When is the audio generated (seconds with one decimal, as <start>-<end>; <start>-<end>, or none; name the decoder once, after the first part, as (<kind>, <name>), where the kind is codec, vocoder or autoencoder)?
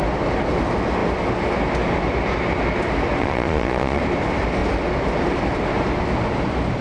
3.2-4.0 (vocoder, Vocos)